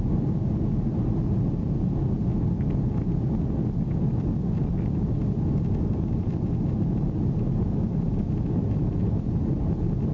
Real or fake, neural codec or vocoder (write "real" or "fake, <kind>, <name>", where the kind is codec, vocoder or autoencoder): real